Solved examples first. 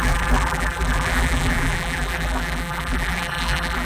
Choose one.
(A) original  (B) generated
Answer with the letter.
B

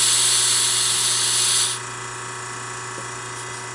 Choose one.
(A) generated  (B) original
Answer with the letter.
B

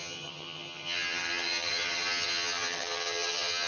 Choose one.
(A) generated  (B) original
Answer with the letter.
A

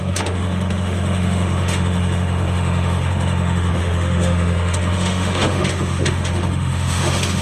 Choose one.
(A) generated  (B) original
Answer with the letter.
A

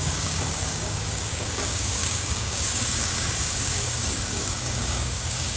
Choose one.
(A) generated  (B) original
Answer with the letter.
A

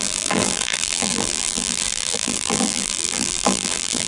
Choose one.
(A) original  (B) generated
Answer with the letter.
B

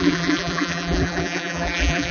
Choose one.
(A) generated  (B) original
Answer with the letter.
A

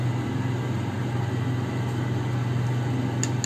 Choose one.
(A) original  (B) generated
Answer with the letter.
A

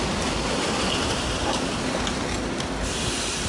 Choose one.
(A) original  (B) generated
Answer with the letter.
A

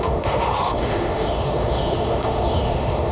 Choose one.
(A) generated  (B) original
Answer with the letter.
A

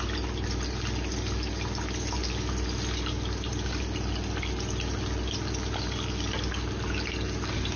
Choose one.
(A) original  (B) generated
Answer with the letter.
A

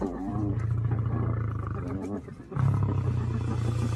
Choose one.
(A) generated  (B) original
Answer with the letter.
B